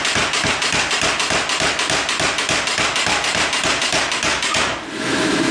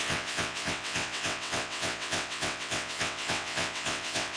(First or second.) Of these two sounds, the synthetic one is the second